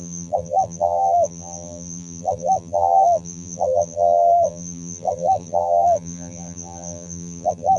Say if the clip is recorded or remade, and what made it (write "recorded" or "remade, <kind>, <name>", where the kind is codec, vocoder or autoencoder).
remade, vocoder, BigVGAN v2